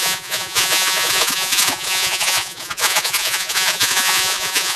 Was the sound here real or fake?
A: fake